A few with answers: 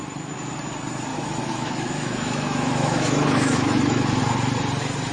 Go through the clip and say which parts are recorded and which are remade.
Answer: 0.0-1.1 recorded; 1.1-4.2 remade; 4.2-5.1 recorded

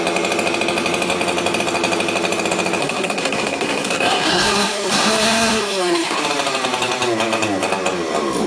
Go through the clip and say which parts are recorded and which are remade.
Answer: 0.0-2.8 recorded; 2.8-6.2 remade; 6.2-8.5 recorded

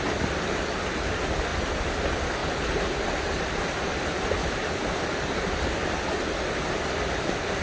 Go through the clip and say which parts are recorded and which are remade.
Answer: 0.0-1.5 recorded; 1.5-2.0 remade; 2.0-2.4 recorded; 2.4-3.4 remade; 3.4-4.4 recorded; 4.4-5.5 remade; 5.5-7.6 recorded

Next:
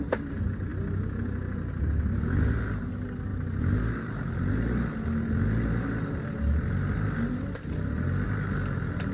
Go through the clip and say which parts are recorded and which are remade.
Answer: 0.0-9.1 recorded

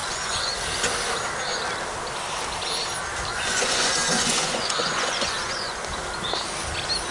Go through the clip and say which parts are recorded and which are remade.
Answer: 0.0-0.5 remade; 0.5-3.3 recorded; 3.3-5.8 remade; 5.8-7.1 recorded